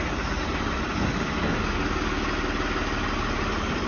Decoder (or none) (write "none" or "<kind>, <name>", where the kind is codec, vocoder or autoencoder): none